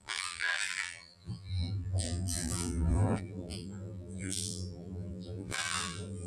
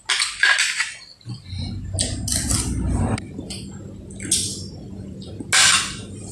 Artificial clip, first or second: first